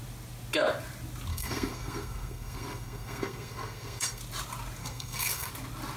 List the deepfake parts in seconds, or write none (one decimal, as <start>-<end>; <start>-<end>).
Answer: 1.3-4.2; 4.8-5.5